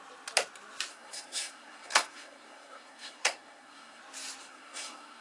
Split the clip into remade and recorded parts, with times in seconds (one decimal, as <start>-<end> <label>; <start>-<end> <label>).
0.0-0.9 recorded; 0.9-4.0 remade; 4.0-4.4 recorded; 4.4-5.2 remade